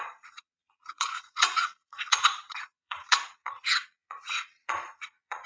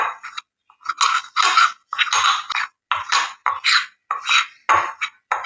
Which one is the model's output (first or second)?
first